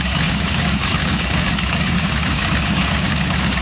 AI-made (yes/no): yes